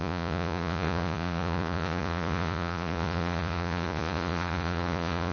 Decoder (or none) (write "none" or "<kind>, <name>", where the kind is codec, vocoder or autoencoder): vocoder, Vocos